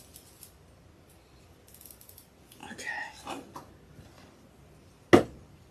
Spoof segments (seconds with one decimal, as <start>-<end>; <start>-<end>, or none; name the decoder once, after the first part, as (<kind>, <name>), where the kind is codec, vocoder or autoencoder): none